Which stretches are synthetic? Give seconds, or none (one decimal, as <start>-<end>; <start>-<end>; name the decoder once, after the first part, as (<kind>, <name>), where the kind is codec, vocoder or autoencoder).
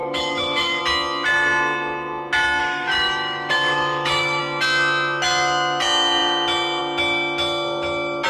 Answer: 0.0-0.8 (autoencoder, DAC-VAE); 2.6-4.4